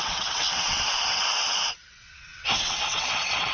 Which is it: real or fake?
fake